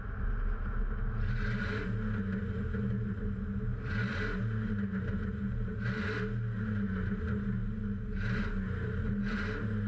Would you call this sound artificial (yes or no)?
no